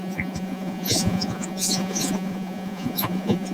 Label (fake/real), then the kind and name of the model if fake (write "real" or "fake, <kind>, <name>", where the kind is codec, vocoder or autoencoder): fake, vocoder, Vocos